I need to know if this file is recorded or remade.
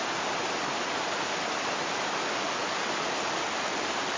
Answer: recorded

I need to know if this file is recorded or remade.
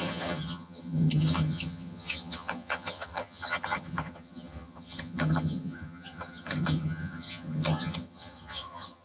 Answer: remade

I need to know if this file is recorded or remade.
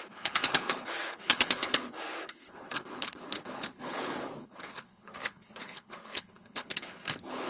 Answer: remade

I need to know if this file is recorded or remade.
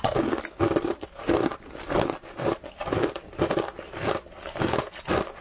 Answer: recorded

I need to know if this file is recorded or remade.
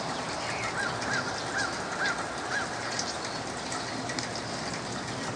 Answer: recorded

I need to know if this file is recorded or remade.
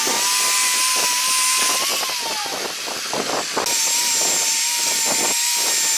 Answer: recorded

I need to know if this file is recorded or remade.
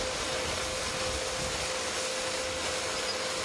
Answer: recorded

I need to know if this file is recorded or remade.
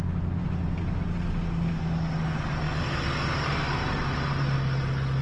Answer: recorded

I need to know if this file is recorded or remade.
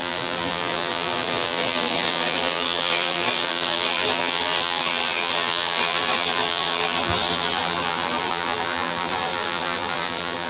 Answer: remade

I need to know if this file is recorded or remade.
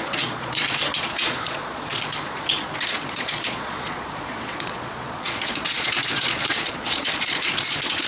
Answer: remade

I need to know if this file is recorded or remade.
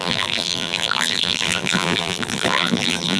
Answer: remade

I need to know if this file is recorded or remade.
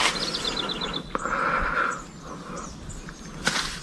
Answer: recorded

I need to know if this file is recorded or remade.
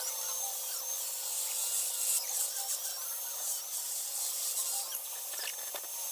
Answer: remade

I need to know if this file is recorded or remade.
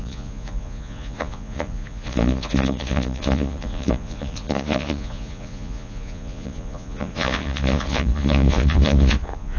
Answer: remade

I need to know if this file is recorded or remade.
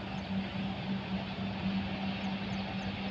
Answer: recorded